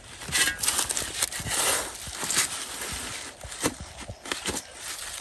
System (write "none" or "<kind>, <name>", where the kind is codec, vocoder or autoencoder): none